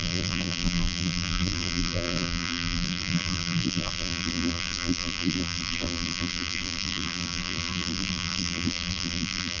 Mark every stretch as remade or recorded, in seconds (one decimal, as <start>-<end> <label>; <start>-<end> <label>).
0.0-9.6 remade